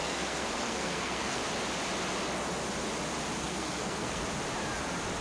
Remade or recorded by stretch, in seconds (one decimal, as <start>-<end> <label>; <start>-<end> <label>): 0.0-1.4 remade; 1.4-3.4 recorded; 3.4-4.2 remade; 4.2-5.2 recorded